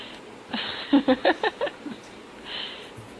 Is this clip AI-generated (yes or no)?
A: no